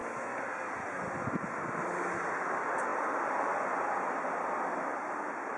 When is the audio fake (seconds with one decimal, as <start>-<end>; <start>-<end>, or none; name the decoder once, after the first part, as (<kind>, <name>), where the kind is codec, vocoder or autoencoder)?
none